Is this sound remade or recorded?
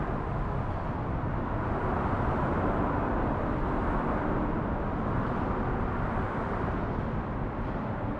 recorded